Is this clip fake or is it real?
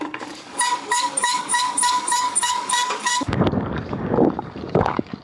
fake